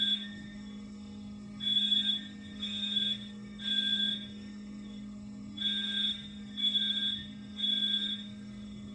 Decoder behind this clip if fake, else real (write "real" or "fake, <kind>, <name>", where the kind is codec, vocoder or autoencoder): fake, codec, SNAC